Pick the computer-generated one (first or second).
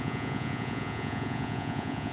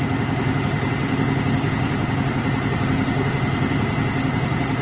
first